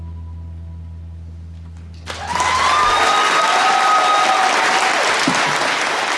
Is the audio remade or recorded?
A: recorded